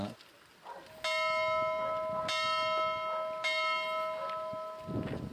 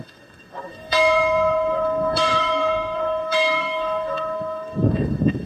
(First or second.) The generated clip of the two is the second